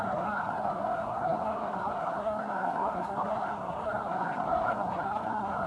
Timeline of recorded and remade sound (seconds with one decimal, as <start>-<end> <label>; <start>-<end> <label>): 0.0-5.7 remade